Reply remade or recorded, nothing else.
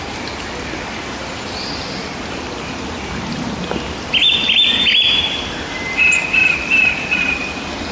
recorded